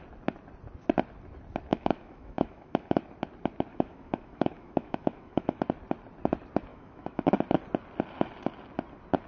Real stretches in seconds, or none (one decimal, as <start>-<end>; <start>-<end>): 0.0-1.7; 3.0-3.7; 5.6-6.7; 7.3-9.3